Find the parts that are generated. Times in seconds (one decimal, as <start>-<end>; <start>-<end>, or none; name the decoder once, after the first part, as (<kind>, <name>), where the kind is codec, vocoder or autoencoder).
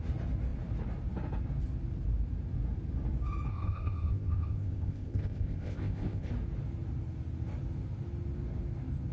3.5-6.3 (codec, ZipCodec)